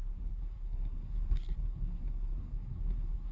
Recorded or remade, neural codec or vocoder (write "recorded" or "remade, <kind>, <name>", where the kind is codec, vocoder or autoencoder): remade, codec, SNAC